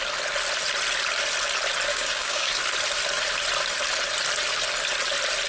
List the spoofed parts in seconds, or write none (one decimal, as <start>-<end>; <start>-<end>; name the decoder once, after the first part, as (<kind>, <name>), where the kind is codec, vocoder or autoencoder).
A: 1.9-2.5 (codec, DAC)